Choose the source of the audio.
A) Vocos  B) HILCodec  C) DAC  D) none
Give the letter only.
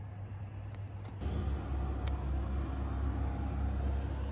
D